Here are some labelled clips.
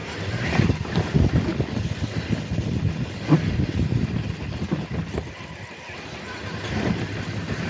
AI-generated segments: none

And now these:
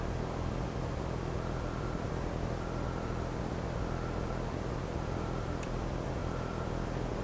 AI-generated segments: 0.0-7.2 (vocoder, BigVGAN v2)

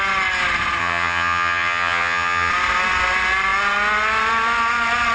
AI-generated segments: 0.8-2.5 (vocoder, HiFi-GAN)

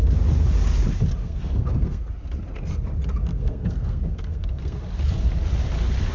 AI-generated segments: 1.2-2.1 (codec, SNAC); 3.3-4.8